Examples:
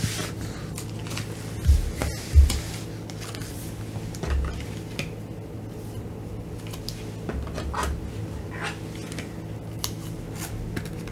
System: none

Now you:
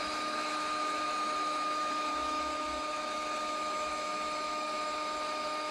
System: autoencoder, DAC-VAE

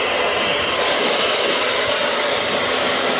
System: none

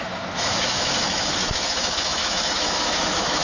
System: autoencoder, DAC-VAE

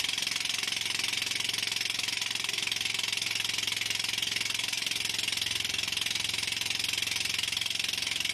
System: none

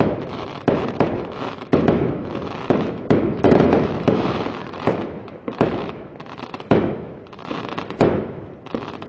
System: autoencoder, DAC-VAE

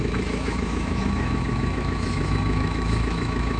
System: autoencoder, DAC-VAE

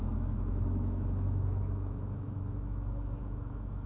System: autoencoder, DAC-VAE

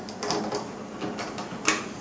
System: none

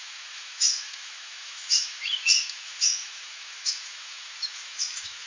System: autoencoder, DAC-VAE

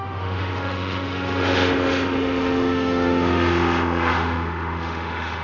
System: autoencoder, DAC-VAE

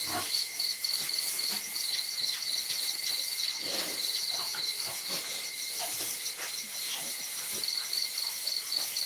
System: autoencoder, DAC-VAE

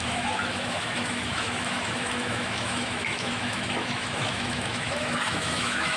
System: autoencoder, DAC-VAE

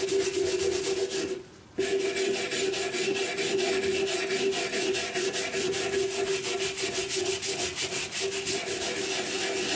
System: none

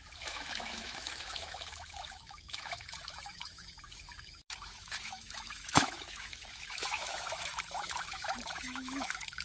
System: autoencoder, DAC-VAE